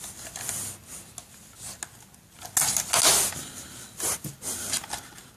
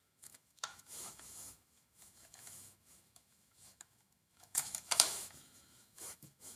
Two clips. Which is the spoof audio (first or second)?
second